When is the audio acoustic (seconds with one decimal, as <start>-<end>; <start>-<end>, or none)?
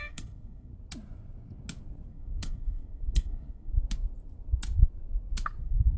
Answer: 0.7-2.1; 3.7-5.6